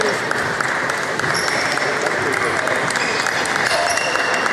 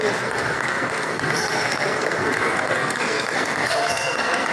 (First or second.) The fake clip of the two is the second